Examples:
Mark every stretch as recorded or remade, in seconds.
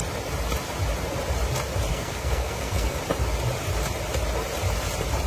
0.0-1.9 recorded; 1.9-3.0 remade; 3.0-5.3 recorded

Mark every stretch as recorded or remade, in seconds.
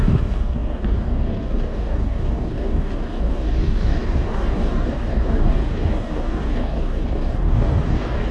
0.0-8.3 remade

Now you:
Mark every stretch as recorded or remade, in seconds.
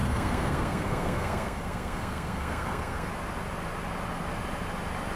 0.0-3.1 remade; 3.1-5.2 recorded